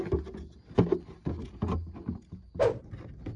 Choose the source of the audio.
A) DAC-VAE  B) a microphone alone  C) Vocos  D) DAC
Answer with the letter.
B